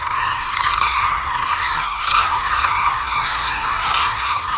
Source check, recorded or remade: remade